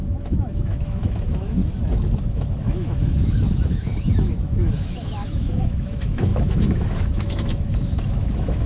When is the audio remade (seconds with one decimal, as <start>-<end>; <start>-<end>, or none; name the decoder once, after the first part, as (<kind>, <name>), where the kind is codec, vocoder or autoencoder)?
0.0-1.6 (autoencoder, DAC-VAE); 2.3-8.7